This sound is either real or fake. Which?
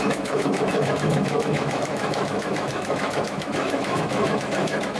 fake